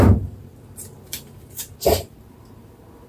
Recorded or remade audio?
remade